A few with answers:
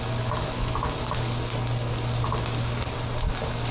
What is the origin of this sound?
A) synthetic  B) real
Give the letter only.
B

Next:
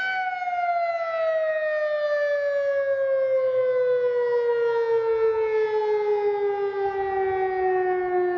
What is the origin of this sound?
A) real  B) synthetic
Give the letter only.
A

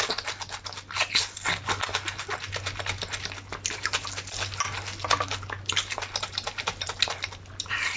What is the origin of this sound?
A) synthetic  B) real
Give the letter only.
B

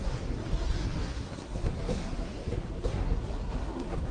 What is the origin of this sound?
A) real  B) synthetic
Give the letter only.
B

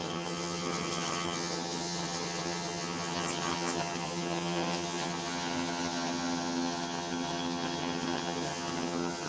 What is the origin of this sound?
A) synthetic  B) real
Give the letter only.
A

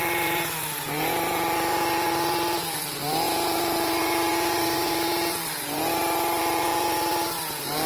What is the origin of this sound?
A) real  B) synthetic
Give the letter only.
B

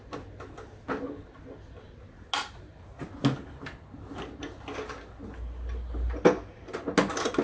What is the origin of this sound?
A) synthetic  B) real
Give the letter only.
B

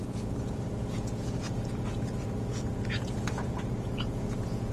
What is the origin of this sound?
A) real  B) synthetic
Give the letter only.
B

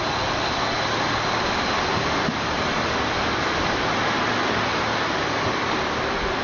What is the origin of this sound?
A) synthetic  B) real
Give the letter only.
B